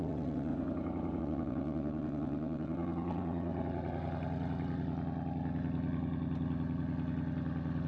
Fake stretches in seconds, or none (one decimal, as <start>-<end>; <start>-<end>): 0.0-0.5; 1.2-3.5